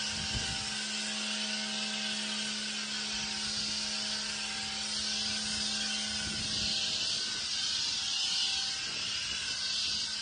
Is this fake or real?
real